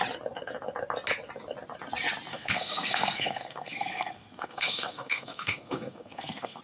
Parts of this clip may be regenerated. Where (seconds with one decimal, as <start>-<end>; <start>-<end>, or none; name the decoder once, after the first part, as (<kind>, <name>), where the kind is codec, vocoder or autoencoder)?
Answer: 2.3-6.6 (codec, SNAC)